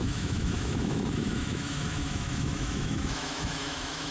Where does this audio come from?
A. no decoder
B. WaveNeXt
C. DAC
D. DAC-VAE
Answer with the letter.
D